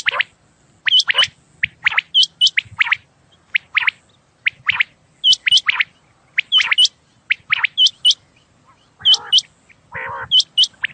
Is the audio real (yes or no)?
yes